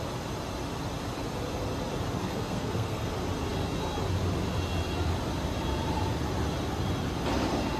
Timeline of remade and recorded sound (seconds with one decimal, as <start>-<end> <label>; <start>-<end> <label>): 0.0-2.2 recorded; 2.2-3.1 remade; 3.1-7.8 recorded